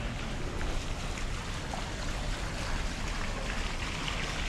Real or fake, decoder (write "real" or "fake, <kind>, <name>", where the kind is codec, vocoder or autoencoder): real